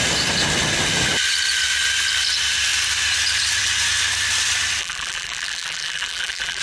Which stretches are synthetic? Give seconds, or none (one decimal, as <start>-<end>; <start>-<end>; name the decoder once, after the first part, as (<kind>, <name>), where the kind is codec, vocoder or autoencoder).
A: 4.8-6.6 (vocoder, BigVGAN v2)